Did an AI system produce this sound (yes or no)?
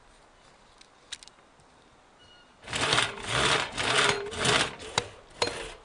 no